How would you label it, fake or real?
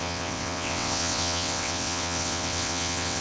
fake